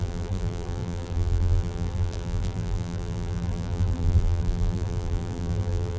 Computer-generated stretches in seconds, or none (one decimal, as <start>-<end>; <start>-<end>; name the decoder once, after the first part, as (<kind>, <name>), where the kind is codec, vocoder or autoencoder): 0.0-6.0 (vocoder, BigVGAN v2)